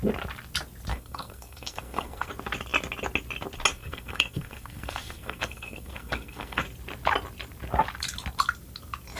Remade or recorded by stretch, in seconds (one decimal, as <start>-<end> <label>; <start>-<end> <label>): 0.0-0.9 recorded; 0.9-2.3 remade; 2.3-3.7 recorded; 3.7-6.7 remade; 6.7-9.2 recorded